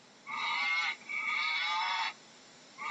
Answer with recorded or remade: remade